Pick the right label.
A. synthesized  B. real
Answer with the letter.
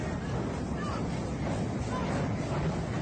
B